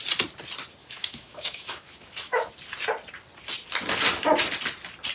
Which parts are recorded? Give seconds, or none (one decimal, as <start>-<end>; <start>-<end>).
0.0-0.8; 2.5-5.1